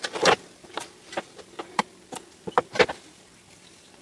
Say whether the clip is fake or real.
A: fake